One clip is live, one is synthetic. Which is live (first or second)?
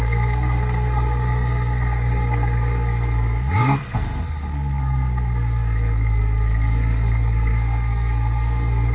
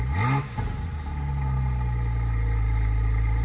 second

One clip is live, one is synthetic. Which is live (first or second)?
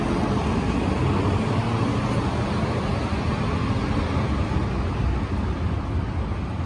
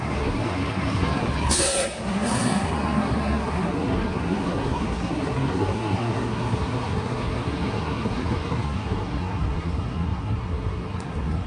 first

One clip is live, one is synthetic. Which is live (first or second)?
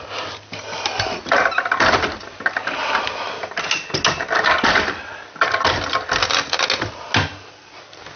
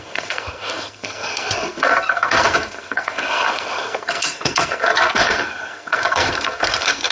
first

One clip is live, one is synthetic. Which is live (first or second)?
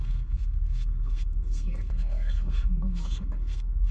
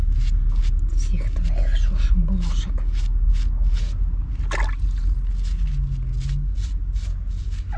second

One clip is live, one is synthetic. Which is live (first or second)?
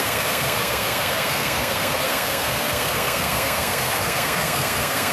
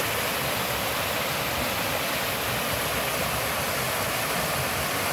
second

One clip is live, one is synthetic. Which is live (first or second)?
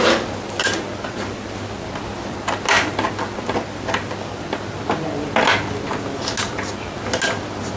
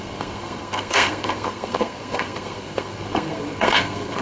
first